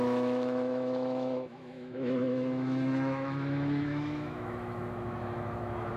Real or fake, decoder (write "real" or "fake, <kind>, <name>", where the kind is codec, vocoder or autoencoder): fake, autoencoder, DAC-VAE